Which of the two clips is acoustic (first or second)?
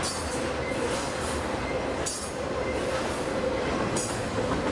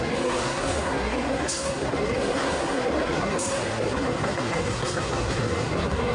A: first